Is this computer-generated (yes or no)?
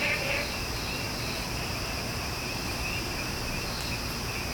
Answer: no